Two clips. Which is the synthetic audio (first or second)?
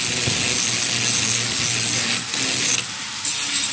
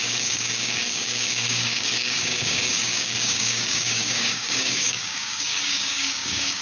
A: second